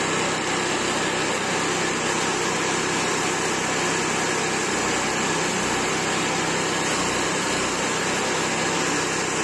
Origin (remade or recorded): recorded